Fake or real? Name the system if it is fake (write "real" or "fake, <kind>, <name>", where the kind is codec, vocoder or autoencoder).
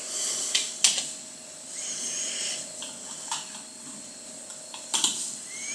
real